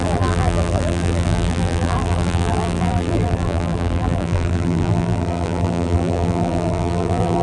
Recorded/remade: remade